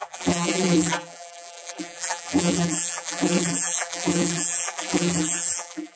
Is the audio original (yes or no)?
no